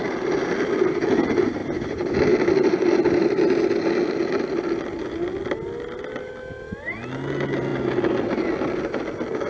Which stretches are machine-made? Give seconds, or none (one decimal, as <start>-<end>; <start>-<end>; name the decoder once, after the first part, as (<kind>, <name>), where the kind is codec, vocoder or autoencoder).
none